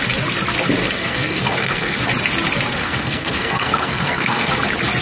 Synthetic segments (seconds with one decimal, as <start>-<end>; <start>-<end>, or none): 0.8-2.0; 2.8-4.5